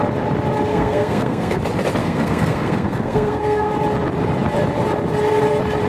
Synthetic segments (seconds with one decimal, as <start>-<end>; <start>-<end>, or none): 0.7-1.6; 2.0-3.7